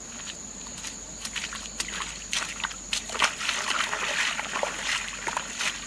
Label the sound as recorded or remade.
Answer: recorded